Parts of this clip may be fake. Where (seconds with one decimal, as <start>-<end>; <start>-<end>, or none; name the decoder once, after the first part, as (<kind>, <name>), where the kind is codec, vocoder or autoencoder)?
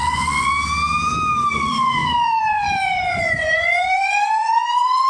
0.0-0.5 (vocoder, Vocos); 1.5-5.1